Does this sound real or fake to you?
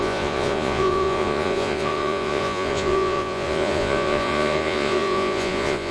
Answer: fake